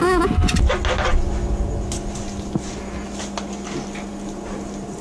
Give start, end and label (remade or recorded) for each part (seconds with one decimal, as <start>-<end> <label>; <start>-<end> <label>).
0.0-5.0 recorded

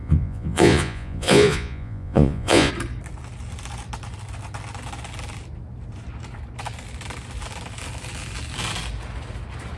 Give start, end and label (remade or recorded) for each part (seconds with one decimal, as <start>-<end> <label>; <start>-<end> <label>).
0.0-2.7 remade; 2.7-9.8 recorded

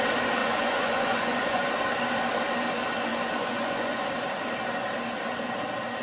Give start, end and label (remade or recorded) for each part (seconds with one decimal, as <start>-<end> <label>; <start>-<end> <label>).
0.0-0.4 recorded; 0.4-1.7 remade; 1.7-3.1 recorded; 3.1-4.1 remade; 4.1-6.0 recorded

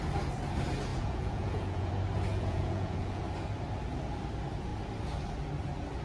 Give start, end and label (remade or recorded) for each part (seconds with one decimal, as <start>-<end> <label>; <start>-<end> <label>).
0.0-0.9 recorded; 0.9-1.9 remade; 1.9-2.3 recorded; 2.3-3.2 remade; 3.2-6.0 recorded

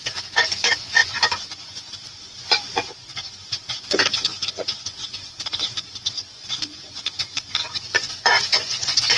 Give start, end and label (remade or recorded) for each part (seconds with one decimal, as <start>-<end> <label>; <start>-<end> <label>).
0.0-9.2 remade

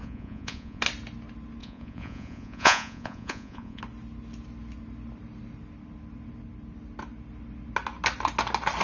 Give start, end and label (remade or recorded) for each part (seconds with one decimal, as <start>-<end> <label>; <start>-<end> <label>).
0.0-0.8 remade; 0.8-1.6 recorded; 1.6-3.8 remade; 3.8-8.8 recorded